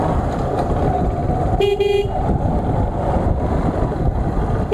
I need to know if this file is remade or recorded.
remade